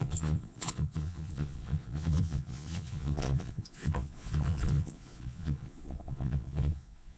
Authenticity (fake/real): fake